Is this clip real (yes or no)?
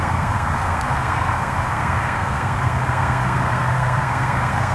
no